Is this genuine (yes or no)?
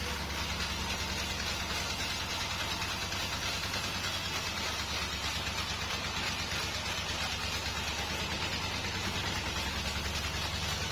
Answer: yes